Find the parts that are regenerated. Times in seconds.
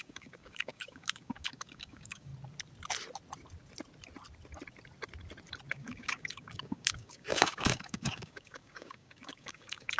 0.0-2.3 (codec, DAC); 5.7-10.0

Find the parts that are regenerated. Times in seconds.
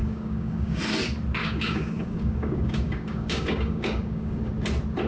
0.0-0.8 (codec, DAC); 1.4-4.5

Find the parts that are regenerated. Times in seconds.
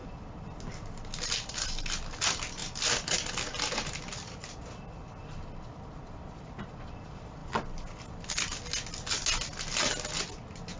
none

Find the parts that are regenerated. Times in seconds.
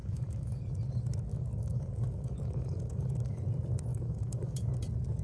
0.0-0.6 (codec, DAC); 1.3-3.4; 3.9-4.7